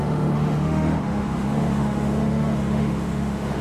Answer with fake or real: fake